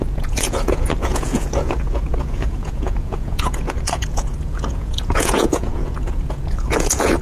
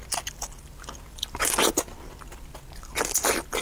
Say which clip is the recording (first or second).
second